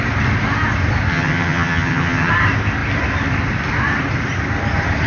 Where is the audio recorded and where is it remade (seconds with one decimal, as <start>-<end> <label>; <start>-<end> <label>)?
0.0-1.1 recorded; 1.1-2.3 remade; 2.3-5.1 recorded